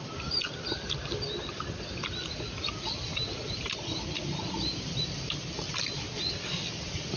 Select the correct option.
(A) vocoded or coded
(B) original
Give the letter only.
B